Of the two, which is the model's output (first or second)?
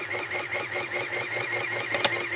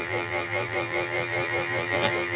second